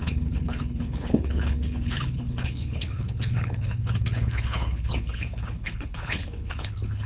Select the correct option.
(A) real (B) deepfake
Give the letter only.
B